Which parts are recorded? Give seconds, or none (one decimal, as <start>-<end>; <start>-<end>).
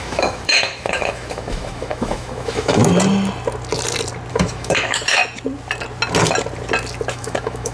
2.8-4.3; 5.2-7.1